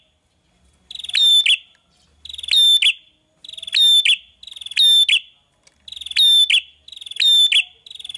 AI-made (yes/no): no